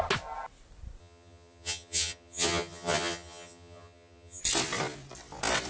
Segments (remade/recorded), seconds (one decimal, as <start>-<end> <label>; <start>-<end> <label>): 0.0-1.0 recorded; 1.0-4.4 remade; 4.4-5.7 recorded